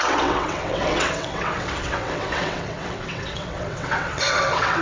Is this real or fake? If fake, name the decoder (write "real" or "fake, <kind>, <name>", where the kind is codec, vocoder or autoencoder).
fake, vocoder, WaveNeXt